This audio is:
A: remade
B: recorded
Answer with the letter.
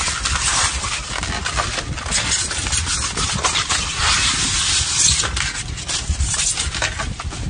B